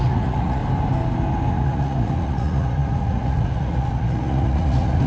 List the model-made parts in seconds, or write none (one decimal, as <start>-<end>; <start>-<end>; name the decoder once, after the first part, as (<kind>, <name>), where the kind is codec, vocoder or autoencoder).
0.0-0.6 (vocoder, Vocos); 1.5-5.1